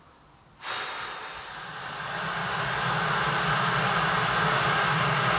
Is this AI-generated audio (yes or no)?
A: no